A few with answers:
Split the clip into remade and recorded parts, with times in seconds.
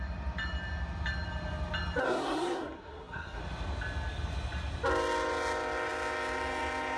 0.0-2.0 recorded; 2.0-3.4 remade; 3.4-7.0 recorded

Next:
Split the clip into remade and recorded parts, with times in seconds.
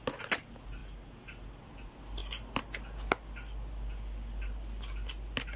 0.0-5.6 recorded